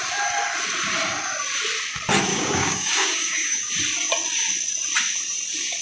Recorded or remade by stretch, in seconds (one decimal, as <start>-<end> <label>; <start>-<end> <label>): 0.0-2.3 recorded; 2.3-3.7 remade; 3.7-5.8 recorded